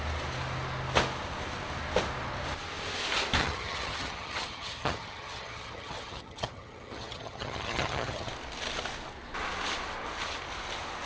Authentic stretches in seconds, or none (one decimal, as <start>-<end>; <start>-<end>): 0.0-3.4; 8.3-11.1

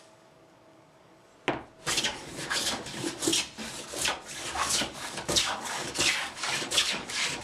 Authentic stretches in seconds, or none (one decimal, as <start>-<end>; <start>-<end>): 1.3-1.9; 3.3-4.3